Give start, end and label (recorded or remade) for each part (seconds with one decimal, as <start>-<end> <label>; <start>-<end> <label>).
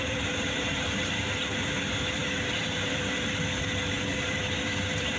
0.0-5.2 remade